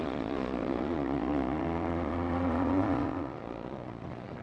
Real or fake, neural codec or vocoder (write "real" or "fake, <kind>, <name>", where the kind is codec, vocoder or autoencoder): fake, vocoder, Vocos